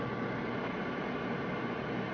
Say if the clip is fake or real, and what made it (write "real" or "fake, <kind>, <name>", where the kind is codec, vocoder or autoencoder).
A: real